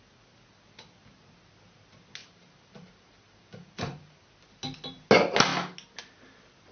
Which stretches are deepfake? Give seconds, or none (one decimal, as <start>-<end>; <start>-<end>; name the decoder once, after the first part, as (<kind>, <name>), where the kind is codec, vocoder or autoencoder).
2.2-4.2 (vocoder, BigVGAN v2)